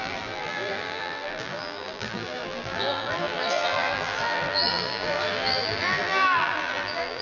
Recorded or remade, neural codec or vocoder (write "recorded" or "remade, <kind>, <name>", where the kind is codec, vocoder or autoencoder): remade, vocoder, BigVGAN v2